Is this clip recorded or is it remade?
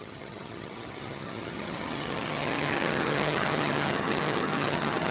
remade